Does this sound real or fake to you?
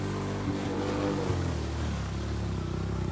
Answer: fake